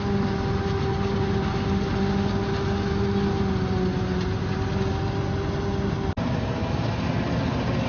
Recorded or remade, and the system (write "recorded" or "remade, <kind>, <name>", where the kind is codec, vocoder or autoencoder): recorded